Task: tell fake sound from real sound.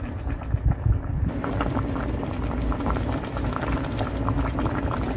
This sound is real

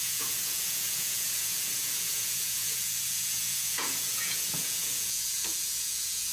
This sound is fake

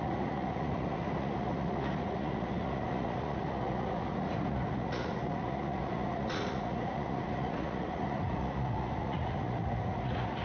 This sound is fake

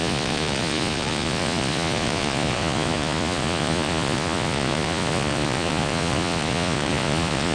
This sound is fake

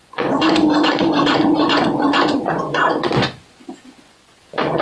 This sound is fake